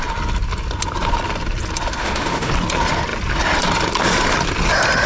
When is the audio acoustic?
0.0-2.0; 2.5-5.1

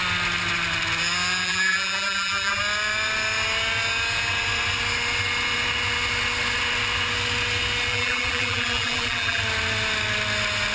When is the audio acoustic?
0.0-1.4; 2.6-7.9; 9.4-10.7